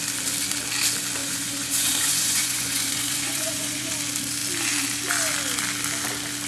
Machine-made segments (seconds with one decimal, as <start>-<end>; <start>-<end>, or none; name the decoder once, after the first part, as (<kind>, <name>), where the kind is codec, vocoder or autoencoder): 1.2-3.9 (vocoder, Vocos)